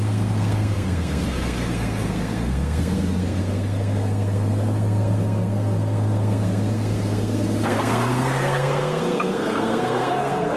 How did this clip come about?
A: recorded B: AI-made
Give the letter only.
B